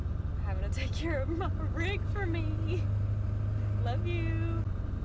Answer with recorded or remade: recorded